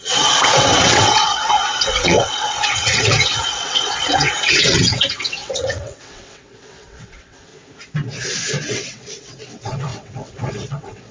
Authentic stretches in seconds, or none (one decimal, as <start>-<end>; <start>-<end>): 7.5-8.6